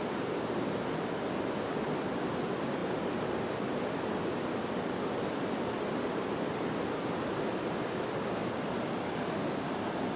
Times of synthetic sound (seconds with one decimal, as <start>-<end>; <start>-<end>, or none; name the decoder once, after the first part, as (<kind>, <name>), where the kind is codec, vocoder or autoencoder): none